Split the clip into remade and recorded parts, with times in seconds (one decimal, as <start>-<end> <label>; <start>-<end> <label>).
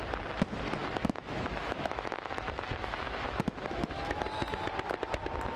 0.0-0.8 recorded; 0.8-4.2 remade; 4.2-5.6 recorded